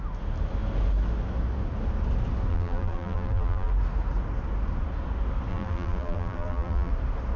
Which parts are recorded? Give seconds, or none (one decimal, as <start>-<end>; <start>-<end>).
0.0-2.5; 3.7-5.5; 6.9-7.4